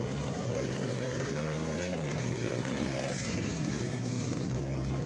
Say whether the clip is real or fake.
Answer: fake